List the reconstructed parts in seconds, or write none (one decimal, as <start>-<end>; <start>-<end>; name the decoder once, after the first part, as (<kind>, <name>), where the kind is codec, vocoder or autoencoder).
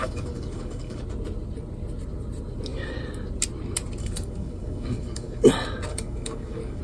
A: 0.0-1.0 (codec, DAC); 4.0-5.5; 5.9-6.8